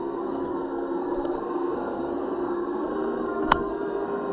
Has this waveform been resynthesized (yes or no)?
yes